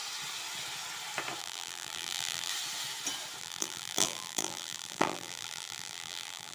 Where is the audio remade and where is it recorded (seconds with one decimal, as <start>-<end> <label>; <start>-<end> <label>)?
0.0-1.4 recorded; 1.4-2.5 remade; 2.5-3.4 recorded; 3.4-6.5 remade